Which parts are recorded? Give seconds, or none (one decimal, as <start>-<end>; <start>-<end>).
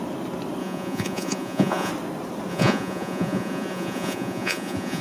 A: 0.0-0.6; 1.9-2.5